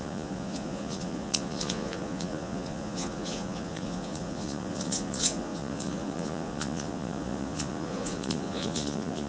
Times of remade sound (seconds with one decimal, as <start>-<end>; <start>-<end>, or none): 0.0-9.3